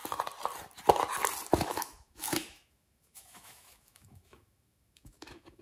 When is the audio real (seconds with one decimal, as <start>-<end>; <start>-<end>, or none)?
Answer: 0.0-1.5